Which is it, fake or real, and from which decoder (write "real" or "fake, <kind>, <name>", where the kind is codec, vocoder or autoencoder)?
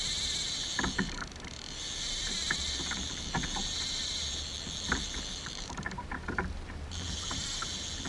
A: fake, vocoder, BigVGAN v2